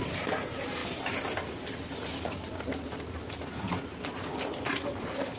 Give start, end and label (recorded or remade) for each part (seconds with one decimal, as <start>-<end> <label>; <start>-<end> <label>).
0.0-5.4 recorded